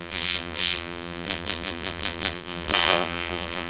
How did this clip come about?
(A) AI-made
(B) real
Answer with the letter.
A